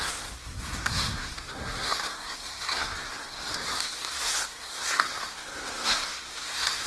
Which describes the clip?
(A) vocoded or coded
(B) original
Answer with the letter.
A